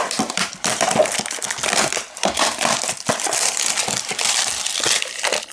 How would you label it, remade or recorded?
remade